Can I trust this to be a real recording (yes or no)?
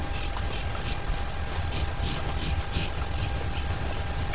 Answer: yes